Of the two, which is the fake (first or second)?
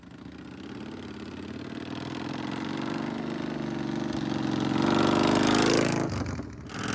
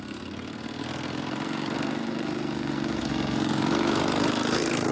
second